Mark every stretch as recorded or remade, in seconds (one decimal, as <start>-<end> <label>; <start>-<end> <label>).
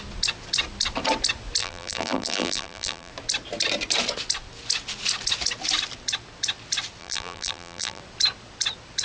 0.0-1.6 recorded; 1.6-3.1 remade; 3.1-7.0 recorded; 7.0-8.0 remade; 8.0-9.0 recorded